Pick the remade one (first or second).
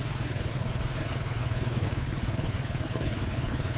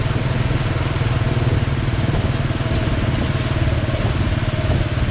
first